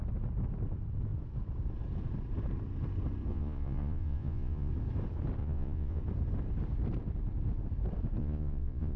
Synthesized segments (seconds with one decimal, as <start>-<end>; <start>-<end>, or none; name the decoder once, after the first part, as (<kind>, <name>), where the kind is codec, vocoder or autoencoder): 3.3-4.7 (vocoder, Vocos); 5.4-6.0; 8.2-9.0